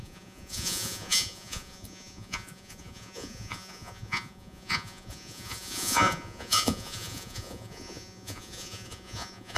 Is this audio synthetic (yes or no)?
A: yes